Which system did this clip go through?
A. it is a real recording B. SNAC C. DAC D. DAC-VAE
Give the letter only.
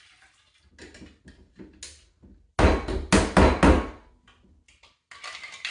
A